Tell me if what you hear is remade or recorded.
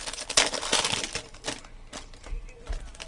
recorded